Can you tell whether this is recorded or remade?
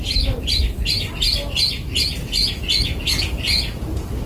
recorded